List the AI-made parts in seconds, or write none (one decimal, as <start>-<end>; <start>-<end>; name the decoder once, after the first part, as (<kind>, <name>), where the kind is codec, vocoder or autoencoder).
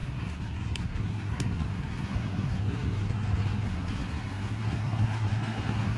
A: 0.0-6.0 (codec, SNAC)